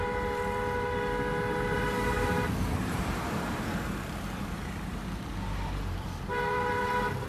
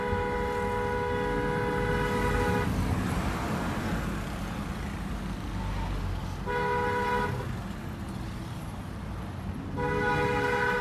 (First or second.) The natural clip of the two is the second